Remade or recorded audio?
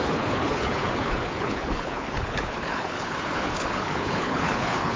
remade